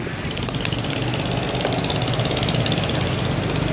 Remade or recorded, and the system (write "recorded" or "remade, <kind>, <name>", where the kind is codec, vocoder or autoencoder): recorded